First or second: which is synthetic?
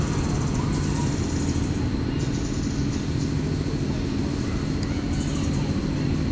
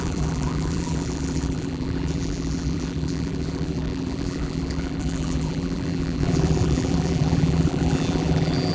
second